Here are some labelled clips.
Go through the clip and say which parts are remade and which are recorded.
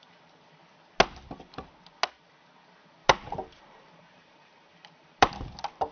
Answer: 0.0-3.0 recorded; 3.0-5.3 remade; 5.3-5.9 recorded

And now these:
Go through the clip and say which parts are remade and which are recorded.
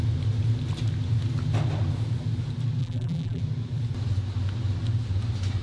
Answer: 0.0-2.8 recorded; 2.8-3.4 remade; 3.4-5.6 recorded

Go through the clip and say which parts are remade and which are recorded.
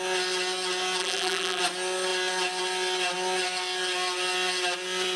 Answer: 0.0-1.0 recorded; 1.0-1.6 remade; 1.6-5.2 recorded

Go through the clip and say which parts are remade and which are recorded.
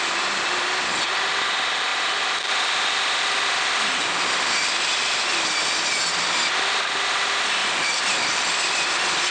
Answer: 0.0-1.9 recorded; 1.9-4.0 remade; 4.0-7.6 recorded; 7.6-8.5 remade; 8.5-9.3 recorded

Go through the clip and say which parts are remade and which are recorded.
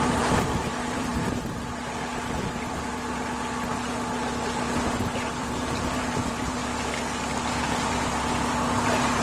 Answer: 0.0-1.1 remade; 1.1-5.3 recorded; 5.3-6.6 remade; 6.6-9.2 recorded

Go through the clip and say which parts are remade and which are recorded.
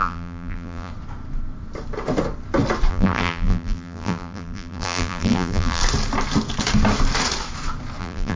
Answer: 0.0-0.9 remade; 0.9-2.9 recorded; 2.9-5.8 remade; 5.8-8.0 recorded; 8.0-8.4 remade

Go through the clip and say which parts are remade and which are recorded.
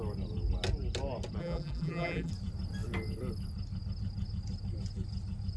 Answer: 0.0-1.4 recorded; 1.4-2.3 remade; 2.3-5.6 recorded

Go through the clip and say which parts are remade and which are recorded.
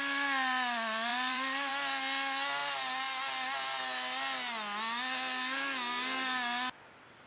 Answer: 0.0-1.1 recorded; 1.1-1.7 remade; 1.7-7.3 recorded